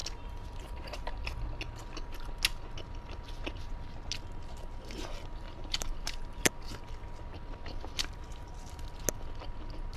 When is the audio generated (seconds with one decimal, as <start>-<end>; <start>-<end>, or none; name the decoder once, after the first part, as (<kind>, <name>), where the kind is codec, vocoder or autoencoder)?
0.0-1.1 (vocoder, BigVGAN v2); 4.6-6.4